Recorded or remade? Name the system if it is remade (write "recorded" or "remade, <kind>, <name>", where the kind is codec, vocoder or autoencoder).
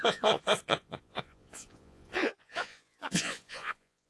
remade, vocoder, Vocos